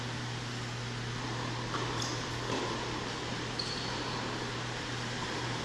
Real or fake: real